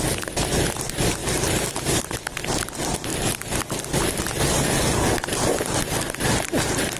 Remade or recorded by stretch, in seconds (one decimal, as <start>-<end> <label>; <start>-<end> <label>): 0.0-7.0 recorded